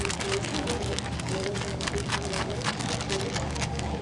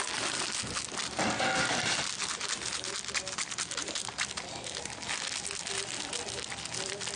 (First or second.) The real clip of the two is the second